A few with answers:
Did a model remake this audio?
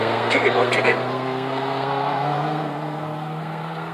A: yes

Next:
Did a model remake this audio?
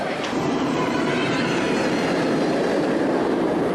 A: yes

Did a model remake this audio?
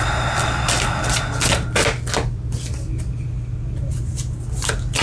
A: no